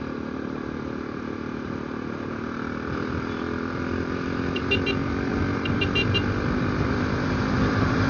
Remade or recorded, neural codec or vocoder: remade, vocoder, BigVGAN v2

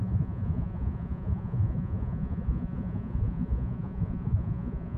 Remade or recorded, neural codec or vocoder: remade, vocoder, Vocos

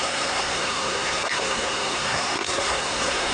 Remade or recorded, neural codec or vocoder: remade, codec, SNAC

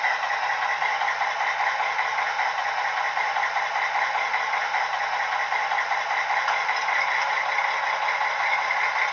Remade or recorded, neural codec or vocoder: recorded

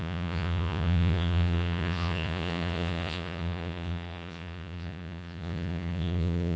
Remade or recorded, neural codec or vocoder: remade, vocoder, Vocos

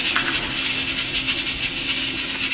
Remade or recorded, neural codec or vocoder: recorded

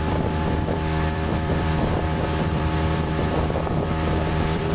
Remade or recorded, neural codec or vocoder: remade, vocoder, BigVGAN v2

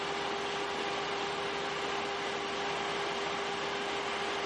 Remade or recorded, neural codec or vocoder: recorded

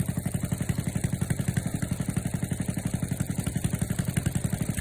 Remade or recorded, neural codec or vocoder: recorded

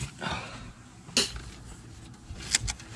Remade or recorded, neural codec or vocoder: recorded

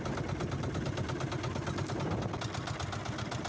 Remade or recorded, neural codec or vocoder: recorded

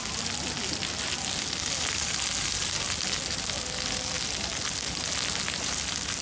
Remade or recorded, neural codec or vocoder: recorded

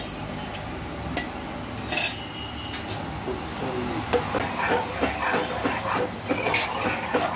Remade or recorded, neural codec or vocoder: recorded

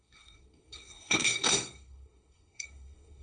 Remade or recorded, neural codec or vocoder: remade, codec, SNAC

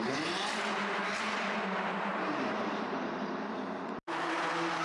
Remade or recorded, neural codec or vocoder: remade, vocoder, BigVGAN v2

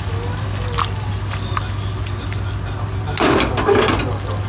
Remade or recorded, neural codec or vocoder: recorded